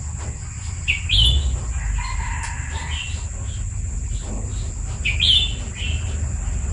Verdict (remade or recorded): recorded